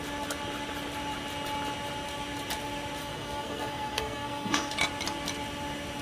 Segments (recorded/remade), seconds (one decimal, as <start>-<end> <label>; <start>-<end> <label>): 0.0-3.0 recorded; 3.0-4.7 remade; 4.7-6.0 recorded

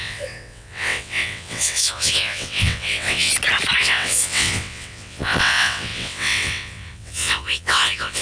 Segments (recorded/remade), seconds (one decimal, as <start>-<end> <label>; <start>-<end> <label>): 0.0-3.3 remade; 3.3-3.8 recorded; 3.8-8.2 remade